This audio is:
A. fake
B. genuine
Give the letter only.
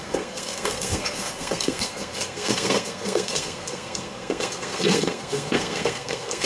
A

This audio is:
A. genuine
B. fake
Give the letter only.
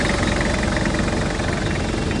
A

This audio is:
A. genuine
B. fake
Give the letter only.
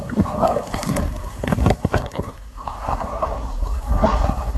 B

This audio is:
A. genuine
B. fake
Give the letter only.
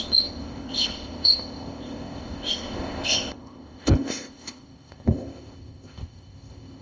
B